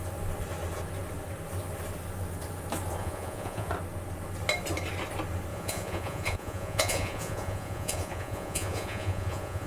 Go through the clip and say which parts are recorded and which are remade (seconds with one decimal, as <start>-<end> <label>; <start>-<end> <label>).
0.0-3.0 recorded; 3.0-3.7 remade; 3.7-5.5 recorded; 5.5-9.7 remade